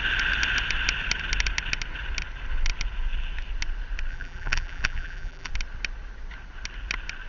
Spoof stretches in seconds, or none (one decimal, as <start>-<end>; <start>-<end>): 4.1-5.5